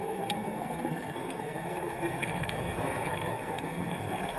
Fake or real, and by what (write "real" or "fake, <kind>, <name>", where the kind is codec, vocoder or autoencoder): fake, codec, SNAC